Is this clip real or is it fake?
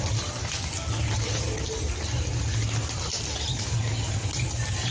real